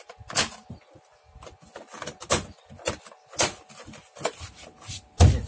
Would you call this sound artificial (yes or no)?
no